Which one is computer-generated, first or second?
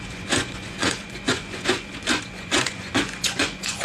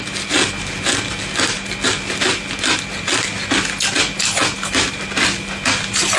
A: first